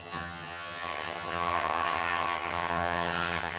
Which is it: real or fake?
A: fake